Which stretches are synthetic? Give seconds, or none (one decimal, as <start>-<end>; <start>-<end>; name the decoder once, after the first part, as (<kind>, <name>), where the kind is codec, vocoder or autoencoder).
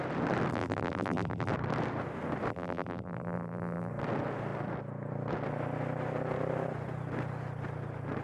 0.5-1.5 (vocoder, BigVGAN v2); 2.5-3.9